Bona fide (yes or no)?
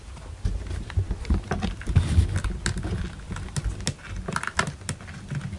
yes